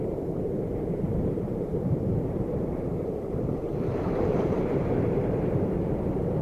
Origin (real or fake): fake